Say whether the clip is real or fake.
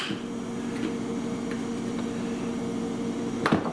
real